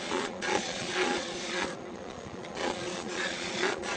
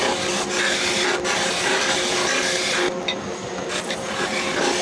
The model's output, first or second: first